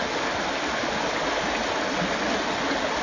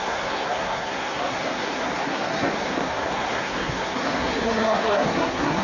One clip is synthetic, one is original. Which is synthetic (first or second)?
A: second